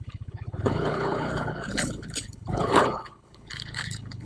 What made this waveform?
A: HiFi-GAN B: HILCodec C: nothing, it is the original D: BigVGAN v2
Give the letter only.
B